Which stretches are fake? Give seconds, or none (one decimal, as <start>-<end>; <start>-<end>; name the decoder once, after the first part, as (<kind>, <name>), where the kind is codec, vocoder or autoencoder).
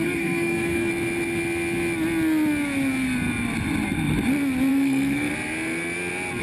0.0-0.9 (codec, SNAC); 4.7-5.3